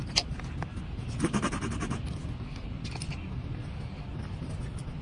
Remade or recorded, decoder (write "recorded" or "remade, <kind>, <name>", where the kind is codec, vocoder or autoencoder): recorded